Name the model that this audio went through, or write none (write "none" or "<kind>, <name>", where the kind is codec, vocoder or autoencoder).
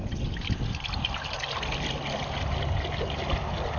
none